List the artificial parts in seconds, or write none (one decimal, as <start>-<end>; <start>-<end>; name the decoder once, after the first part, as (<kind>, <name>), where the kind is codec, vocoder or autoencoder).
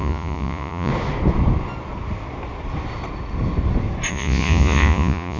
0.0-0.9 (vocoder, Vocos); 4.1-5.4